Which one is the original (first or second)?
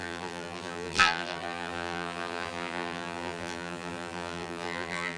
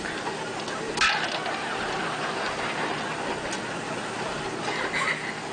second